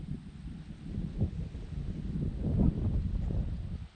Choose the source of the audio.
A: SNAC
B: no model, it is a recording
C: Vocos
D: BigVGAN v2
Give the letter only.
B